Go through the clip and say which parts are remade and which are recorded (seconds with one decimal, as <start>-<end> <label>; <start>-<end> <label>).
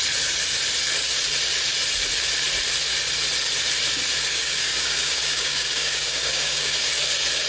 0.0-4.3 recorded; 4.3-6.9 remade; 6.9-7.5 recorded